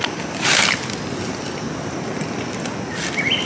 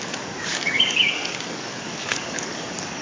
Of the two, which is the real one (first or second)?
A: first